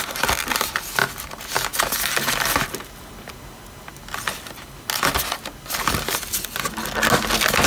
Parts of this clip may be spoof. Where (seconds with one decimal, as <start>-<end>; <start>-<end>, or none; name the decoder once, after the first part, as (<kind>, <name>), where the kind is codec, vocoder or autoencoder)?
none